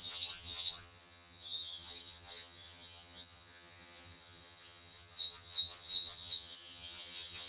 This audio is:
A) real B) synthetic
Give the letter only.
B